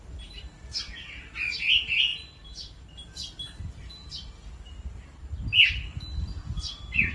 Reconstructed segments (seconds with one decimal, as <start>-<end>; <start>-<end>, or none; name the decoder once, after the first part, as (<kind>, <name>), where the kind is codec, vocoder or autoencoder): 2.1-5.3 (vocoder, BigVGAN v2)